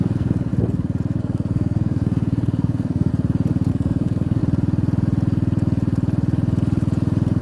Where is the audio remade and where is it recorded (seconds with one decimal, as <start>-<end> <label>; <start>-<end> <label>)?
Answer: 0.0-0.5 remade; 0.5-1.2 recorded; 1.2-3.1 remade; 3.1-3.7 recorded; 3.7-4.4 remade; 4.4-7.4 recorded